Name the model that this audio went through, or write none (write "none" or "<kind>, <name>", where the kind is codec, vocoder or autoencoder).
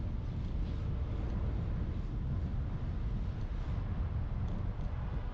none